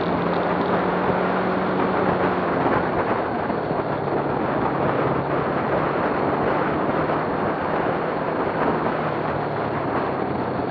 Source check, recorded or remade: recorded